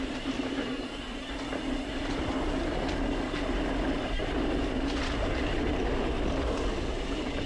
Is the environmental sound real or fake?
real